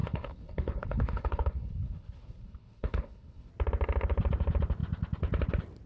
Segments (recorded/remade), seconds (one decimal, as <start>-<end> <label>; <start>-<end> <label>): 0.0-3.5 remade; 3.5-5.9 recorded

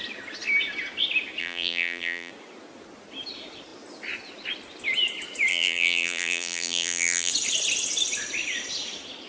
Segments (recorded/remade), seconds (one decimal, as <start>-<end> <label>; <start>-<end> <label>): 0.0-1.4 recorded; 1.4-2.3 remade; 2.3-5.5 recorded; 5.5-7.3 remade; 7.3-9.3 recorded

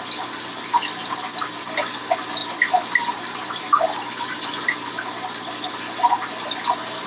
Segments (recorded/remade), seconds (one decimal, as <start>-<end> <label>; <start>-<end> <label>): 0.0-2.4 recorded; 2.4-3.6 remade; 3.6-7.1 recorded

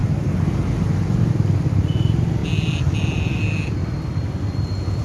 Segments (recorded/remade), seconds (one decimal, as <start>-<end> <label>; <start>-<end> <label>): 0.0-5.0 recorded

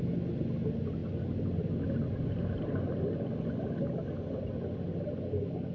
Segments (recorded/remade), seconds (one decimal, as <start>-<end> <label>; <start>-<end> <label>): 0.0-5.7 recorded

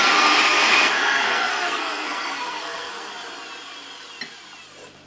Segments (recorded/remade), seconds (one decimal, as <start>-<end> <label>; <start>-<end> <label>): 0.0-3.1 remade; 3.1-5.1 recorded

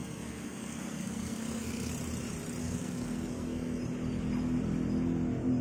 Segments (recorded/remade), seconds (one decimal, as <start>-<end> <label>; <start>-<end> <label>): 0.0-1.9 remade; 1.9-2.6 recorded; 2.6-3.8 remade; 3.8-5.6 recorded